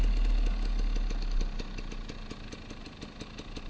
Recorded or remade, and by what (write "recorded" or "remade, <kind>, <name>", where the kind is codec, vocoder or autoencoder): recorded